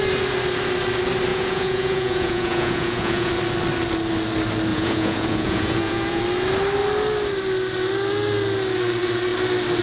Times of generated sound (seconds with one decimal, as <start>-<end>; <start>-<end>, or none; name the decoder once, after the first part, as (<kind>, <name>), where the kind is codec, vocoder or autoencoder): 1.3-3.3 (vocoder, Vocos); 4.7-6.2